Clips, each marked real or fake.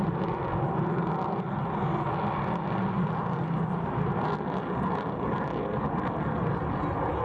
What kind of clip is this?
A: real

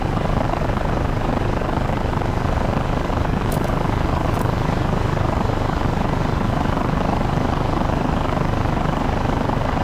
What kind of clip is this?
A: fake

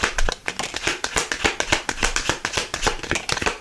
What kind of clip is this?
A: real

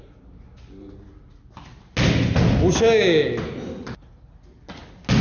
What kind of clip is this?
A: real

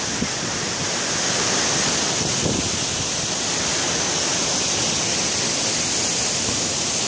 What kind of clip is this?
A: real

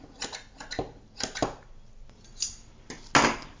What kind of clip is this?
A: real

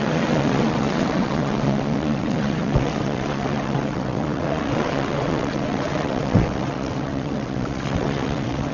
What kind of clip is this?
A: fake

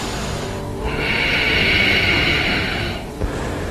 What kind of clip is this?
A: real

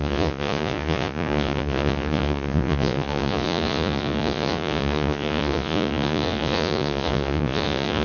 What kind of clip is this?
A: fake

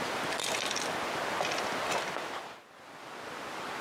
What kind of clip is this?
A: real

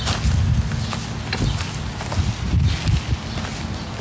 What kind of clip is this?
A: real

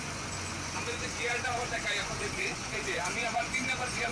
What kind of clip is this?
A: fake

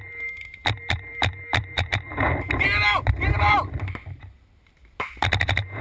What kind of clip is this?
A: fake